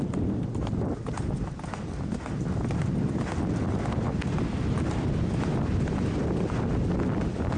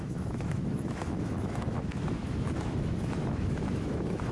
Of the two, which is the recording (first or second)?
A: first